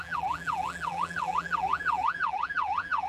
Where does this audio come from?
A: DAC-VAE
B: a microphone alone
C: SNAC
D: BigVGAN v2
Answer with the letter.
D